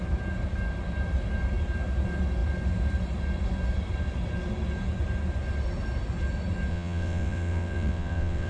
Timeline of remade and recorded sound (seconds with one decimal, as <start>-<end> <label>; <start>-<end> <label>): 0.0-6.7 recorded; 6.7-8.5 remade